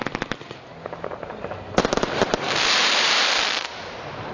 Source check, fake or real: real